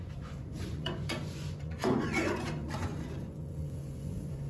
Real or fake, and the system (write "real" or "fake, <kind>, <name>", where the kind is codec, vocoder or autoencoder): fake, vocoder, Vocos